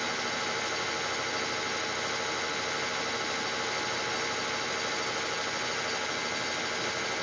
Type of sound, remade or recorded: recorded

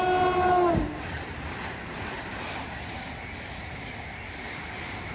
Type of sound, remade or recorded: recorded